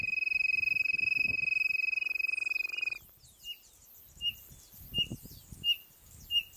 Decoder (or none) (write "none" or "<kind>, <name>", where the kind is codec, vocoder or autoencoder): none